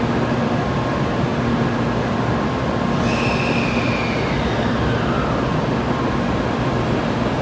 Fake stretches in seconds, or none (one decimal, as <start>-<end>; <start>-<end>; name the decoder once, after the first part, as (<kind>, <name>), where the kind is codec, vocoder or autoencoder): none